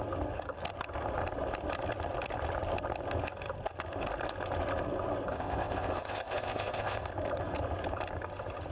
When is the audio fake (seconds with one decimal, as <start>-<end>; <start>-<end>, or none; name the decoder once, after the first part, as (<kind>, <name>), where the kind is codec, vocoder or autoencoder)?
5.3-7.1 (codec, ZipCodec)